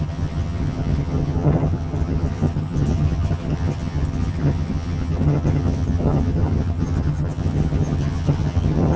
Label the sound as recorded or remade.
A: remade